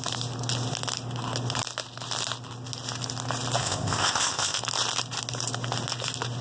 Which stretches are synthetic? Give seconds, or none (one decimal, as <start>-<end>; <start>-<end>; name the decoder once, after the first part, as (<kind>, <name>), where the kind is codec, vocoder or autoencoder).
3.6-4.6 (codec, ZipCodec)